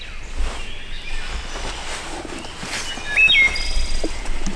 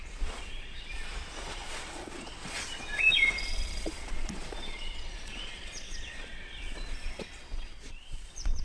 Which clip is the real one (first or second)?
first